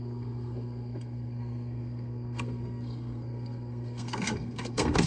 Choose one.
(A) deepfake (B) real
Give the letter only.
A